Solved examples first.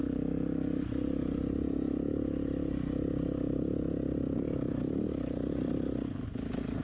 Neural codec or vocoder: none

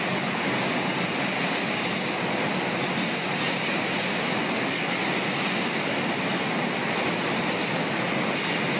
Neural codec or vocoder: none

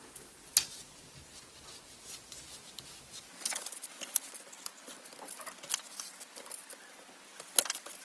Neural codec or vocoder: none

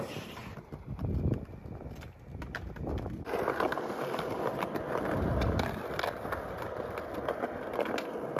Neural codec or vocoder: none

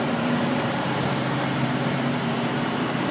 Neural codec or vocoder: vocoder, BigVGAN v2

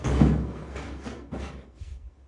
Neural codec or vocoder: codec, SNAC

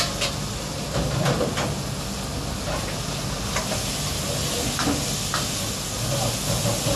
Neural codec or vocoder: none